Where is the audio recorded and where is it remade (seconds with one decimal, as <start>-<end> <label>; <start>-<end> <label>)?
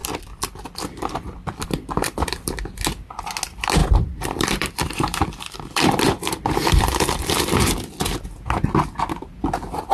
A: 0.0-2.6 remade; 2.6-3.8 recorded; 3.8-7.9 remade; 7.9-9.9 recorded